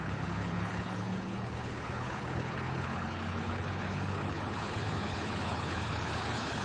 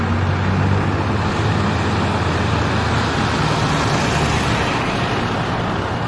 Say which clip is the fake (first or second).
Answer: first